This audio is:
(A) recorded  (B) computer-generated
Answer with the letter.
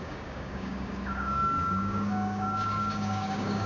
B